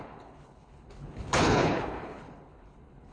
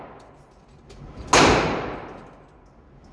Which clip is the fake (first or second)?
first